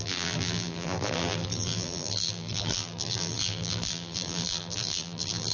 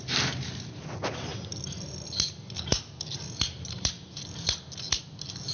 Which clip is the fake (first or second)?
first